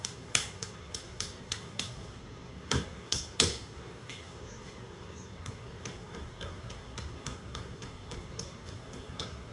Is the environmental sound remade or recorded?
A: remade